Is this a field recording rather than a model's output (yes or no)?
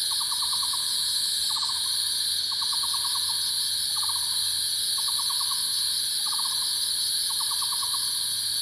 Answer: yes